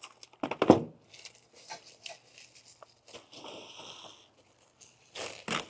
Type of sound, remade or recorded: recorded